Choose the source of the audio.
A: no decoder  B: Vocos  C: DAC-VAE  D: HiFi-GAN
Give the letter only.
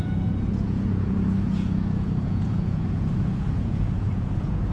B